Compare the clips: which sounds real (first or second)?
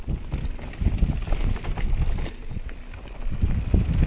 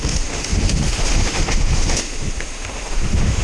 first